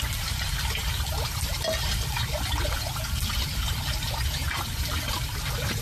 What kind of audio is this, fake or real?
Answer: fake